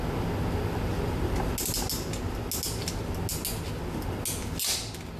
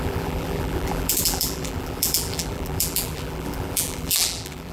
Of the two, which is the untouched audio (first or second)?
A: first